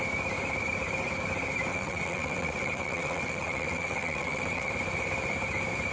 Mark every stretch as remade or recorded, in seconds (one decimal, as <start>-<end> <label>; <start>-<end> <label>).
0.0-1.7 recorded; 1.7-4.7 remade; 4.7-5.9 recorded